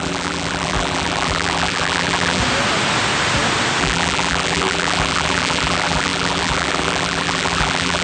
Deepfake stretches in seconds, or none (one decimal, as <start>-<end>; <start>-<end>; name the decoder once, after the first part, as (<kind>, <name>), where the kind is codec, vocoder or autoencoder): 0.0-2.4 (vocoder, BigVGAN v2); 3.8-8.0